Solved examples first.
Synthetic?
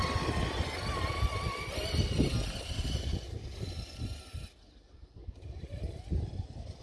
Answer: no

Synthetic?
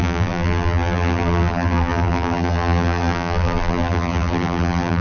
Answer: yes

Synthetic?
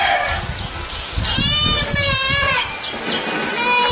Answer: no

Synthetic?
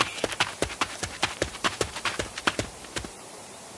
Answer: yes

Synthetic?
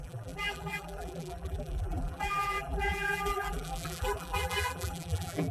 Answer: yes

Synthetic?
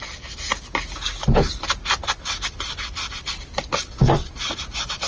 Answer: no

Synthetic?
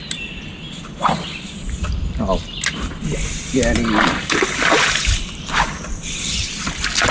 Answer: no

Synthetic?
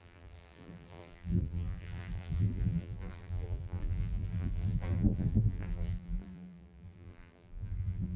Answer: yes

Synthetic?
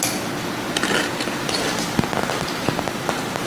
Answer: no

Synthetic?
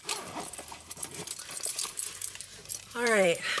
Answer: yes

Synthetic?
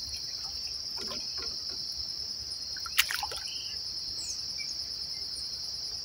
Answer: no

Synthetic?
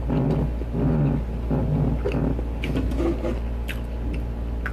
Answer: no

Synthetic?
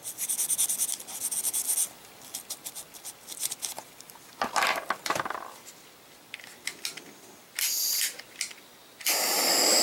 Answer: no